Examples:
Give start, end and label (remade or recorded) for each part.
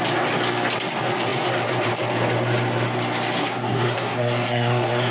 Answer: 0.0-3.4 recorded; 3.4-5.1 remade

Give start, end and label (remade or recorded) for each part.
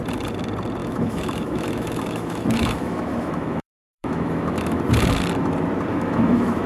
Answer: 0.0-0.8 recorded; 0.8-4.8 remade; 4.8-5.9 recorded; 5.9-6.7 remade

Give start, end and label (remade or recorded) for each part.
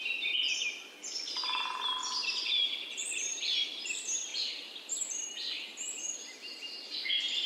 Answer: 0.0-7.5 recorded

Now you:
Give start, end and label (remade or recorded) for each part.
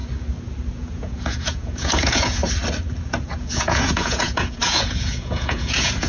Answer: 0.0-0.7 recorded; 0.7-2.4 remade; 2.4-3.0 recorded; 3.0-6.1 remade